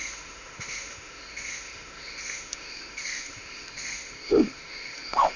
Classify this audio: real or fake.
fake